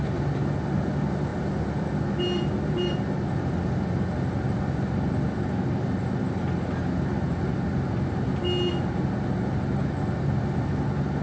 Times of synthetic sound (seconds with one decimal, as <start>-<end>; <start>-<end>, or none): none